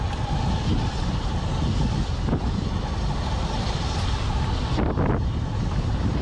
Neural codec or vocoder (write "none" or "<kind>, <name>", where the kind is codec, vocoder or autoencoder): none